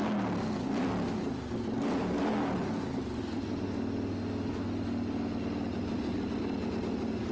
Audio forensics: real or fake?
real